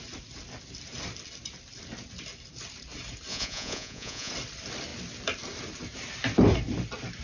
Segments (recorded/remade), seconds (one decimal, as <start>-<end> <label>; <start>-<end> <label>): 0.0-3.3 recorded; 3.3-4.3 remade; 4.3-7.2 recorded